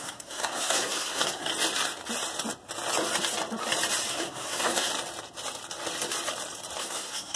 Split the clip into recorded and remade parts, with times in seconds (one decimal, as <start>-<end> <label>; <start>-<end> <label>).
0.0-1.5 remade; 1.5-4.1 recorded; 4.1-4.9 remade; 4.9-6.8 recorded; 6.8-7.4 remade